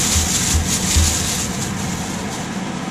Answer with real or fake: real